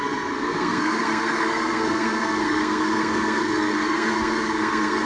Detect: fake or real fake